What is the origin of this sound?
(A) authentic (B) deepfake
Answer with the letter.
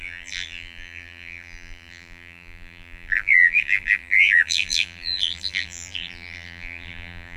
B